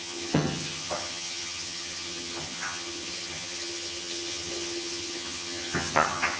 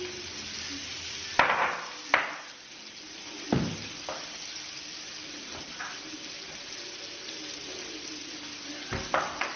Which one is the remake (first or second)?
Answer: first